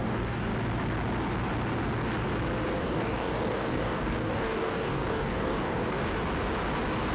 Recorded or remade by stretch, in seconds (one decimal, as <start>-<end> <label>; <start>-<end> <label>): 0.0-0.5 remade; 0.5-2.8 recorded; 2.8-6.1 remade; 6.1-7.1 recorded